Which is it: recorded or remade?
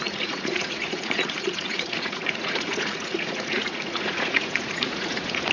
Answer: remade